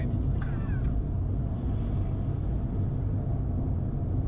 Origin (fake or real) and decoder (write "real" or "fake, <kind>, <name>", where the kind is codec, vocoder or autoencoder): real